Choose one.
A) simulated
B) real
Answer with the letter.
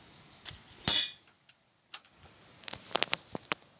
B